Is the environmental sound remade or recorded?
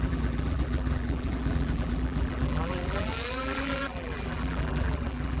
remade